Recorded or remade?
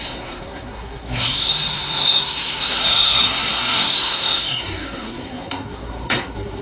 remade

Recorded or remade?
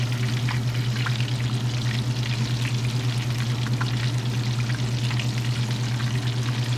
recorded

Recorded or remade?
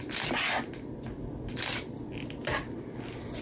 recorded